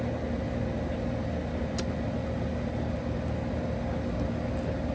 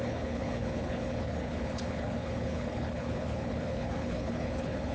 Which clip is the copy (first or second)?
second